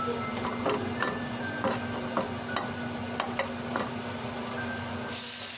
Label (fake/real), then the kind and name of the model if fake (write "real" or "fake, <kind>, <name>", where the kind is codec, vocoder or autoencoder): real